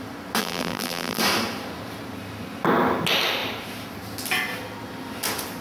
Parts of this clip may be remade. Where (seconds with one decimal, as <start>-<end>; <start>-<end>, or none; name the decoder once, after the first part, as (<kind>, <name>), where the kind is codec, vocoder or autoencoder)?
0.4-1.2 (vocoder, BigVGAN v2)